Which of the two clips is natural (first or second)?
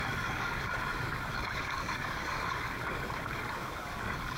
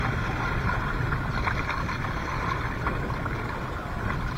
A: second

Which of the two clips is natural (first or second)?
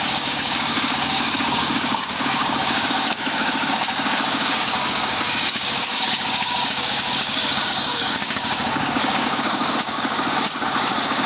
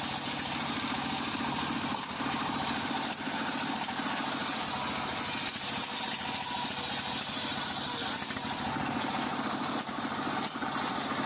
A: second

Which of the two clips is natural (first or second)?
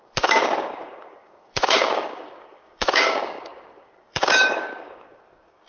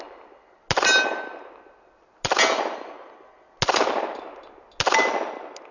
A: second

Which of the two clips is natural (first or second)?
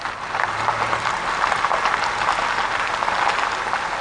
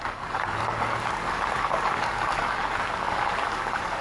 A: first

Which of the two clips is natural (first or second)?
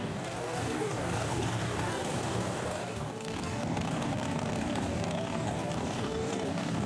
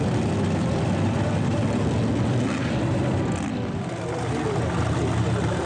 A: second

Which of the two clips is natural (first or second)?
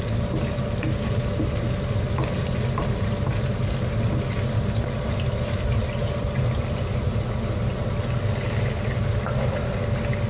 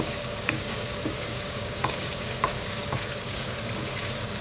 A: first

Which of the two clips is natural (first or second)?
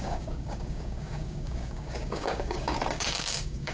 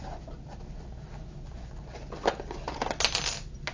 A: second